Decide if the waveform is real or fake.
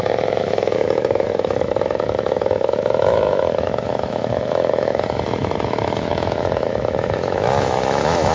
fake